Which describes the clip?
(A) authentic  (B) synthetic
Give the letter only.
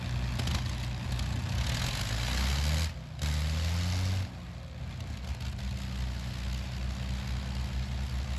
A